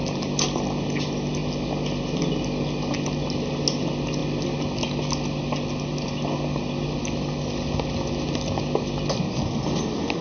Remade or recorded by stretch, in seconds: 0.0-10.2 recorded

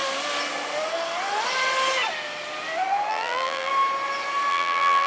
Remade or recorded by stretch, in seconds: 0.0-3.1 recorded; 3.1-3.7 remade; 3.7-4.5 recorded; 4.5-5.1 remade

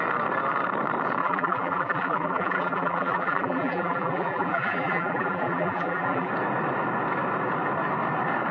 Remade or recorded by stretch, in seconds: 0.0-1.2 recorded; 1.2-6.3 remade; 6.3-8.5 recorded

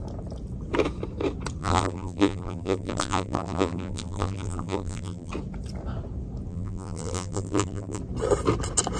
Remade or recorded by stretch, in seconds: 0.0-1.6 recorded; 1.6-5.3 remade; 5.3-6.5 recorded; 6.5-8.0 remade; 8.0-9.0 recorded